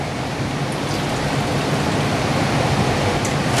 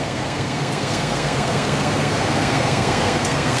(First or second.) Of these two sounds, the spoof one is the second